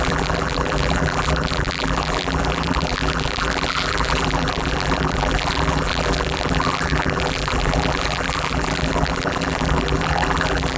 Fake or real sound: fake